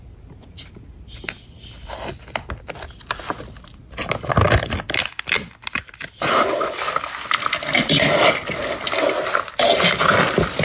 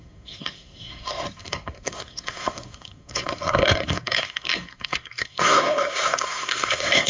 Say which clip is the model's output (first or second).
second